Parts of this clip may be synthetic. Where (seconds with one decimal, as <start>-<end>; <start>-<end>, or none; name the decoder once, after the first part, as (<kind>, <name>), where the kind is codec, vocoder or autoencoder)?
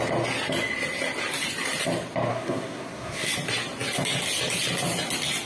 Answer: 2.3-3.3 (codec, SNAC)